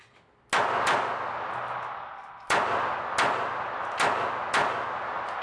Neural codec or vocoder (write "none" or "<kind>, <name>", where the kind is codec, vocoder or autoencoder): none